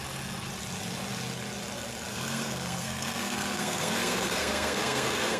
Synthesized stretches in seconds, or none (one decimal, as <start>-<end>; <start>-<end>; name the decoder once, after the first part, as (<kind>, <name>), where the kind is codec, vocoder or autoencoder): 2.1-5.4 (codec, SNAC)